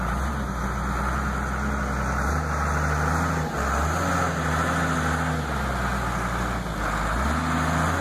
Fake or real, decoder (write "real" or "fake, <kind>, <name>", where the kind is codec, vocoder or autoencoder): real